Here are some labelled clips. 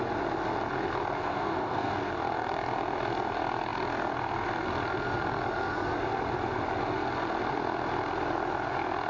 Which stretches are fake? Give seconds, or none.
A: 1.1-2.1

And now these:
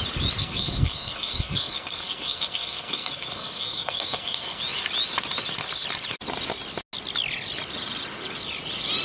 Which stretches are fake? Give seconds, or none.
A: 0.4-4.6

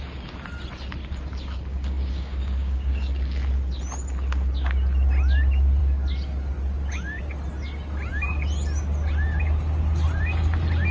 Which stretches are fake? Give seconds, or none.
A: 1.7-3.1

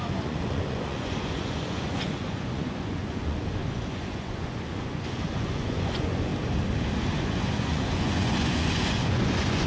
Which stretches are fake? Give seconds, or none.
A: 0.0-6.3; 7.2-9.7